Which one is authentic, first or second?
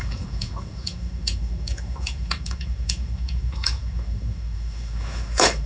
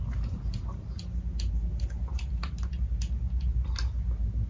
second